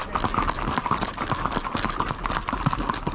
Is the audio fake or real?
real